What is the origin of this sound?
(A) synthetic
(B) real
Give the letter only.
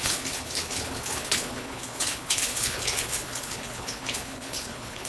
A